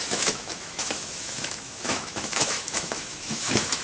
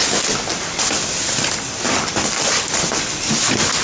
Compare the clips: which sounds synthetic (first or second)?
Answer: first